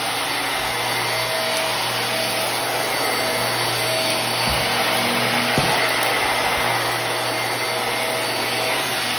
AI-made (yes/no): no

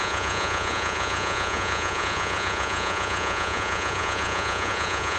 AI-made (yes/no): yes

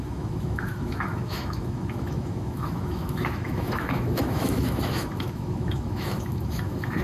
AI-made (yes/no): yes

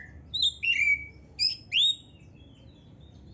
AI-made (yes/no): no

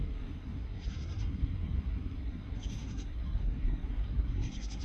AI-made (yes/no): yes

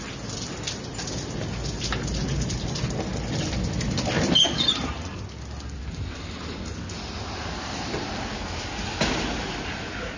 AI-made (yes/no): no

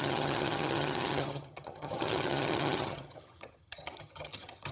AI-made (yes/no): yes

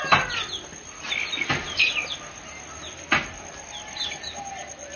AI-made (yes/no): no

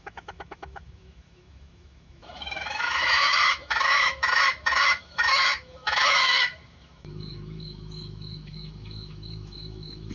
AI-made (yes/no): yes